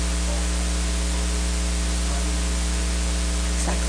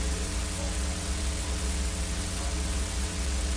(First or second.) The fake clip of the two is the second